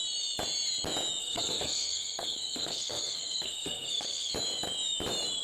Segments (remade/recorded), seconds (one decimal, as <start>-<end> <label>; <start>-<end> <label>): 0.0-1.2 recorded; 1.2-4.3 remade; 4.3-5.4 recorded